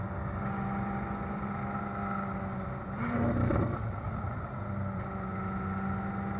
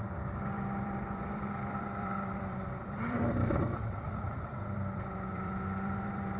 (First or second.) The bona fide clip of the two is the first